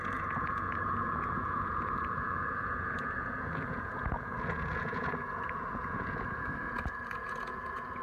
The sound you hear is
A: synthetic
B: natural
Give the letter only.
A